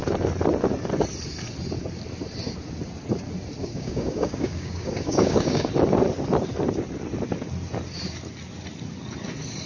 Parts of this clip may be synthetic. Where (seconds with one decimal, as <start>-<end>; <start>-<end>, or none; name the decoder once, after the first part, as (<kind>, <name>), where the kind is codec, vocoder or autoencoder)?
3.6-5.7 (codec, DAC)